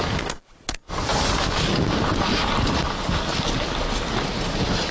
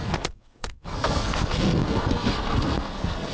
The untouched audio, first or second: first